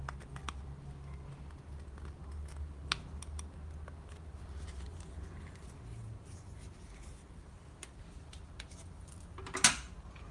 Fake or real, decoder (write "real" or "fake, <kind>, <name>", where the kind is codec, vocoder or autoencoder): real